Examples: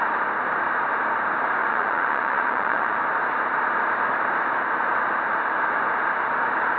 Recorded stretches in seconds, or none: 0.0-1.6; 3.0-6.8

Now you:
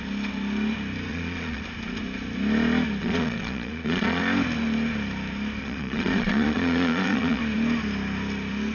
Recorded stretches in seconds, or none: 0.0-1.1; 1.6-3.0; 4.2-5.6; 7.4-8.7

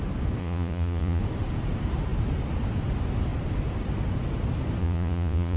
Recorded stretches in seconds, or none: 0.0-0.4; 1.2-4.8

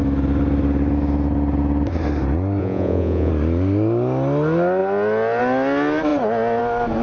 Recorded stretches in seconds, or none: 0.0-2.6; 3.3-7.0